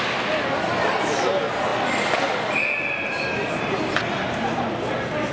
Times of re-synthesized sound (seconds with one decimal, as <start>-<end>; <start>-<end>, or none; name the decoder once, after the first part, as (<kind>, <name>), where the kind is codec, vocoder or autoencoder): none

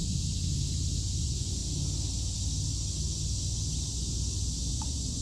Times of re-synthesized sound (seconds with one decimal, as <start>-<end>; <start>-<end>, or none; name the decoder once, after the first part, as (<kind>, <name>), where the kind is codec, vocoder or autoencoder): 1.2-1.6 (vocoder, Vocos); 4.7-5.2

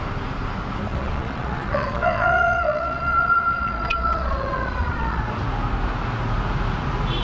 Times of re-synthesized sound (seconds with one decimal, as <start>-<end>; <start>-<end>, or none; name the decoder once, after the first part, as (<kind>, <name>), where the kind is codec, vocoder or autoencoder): 0.9-5.2 (vocoder, Vocos)